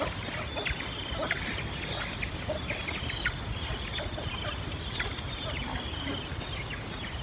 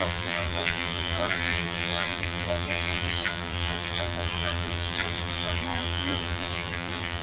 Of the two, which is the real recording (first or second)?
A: first